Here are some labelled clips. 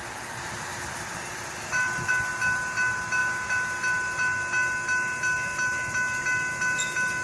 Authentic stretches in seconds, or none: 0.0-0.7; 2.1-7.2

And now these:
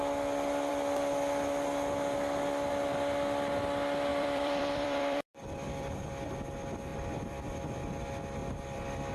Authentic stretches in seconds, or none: 0.0-4.1; 6.3-6.9; 7.6-8.4

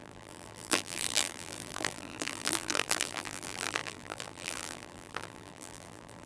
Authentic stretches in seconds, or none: none

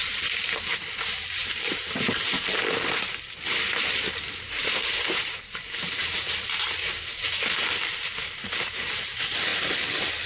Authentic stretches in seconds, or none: 6.0-7.8; 9.5-10.3